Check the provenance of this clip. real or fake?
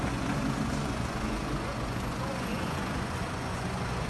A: fake